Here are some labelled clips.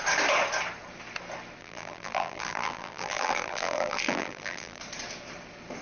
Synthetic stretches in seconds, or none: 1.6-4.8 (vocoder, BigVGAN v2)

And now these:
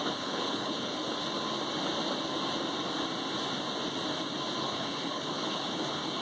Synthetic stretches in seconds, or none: 0.0-0.9 (codec, HILCodec); 4.6-6.2

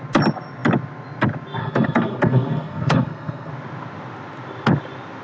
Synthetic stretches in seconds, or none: 1.6-3.5 (codec, SNAC)